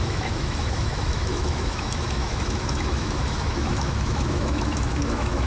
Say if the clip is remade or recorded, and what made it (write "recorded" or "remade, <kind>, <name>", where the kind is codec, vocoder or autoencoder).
remade, autoencoder, DAC-VAE